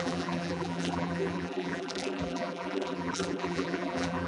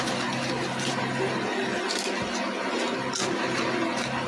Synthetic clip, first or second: first